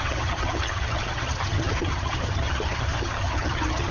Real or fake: fake